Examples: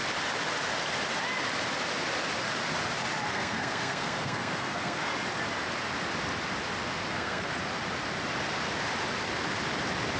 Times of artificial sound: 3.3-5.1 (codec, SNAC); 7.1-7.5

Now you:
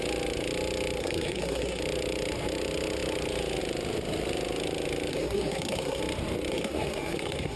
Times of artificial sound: 1.0-1.8 (codec, SNAC); 5.1-6.0; 6.5-7.6

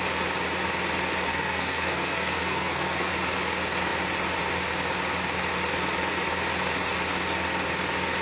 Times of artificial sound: 1.3-3.1 (codec, SNAC)

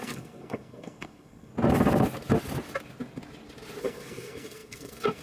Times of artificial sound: 0.0-1.5 (codec, SNAC); 3.8-5.2

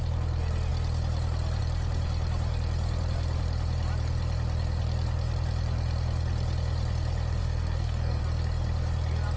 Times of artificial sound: 7.4-8.2 (codec, SNAC)

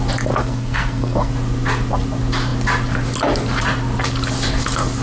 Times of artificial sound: 0.4-1.3 (codec, SNAC)